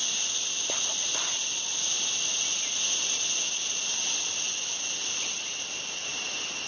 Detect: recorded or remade recorded